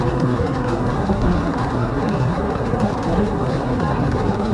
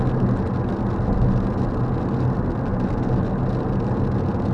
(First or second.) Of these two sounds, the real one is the second